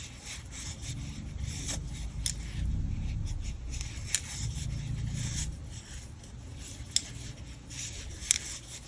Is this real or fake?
real